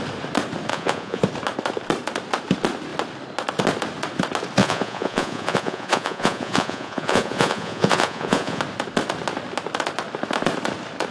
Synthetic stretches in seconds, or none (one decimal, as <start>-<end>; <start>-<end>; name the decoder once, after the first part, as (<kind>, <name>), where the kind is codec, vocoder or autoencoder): 0.7-1.2 (vocoder, Vocos); 4.6-8.6